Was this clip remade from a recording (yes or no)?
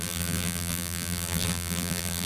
yes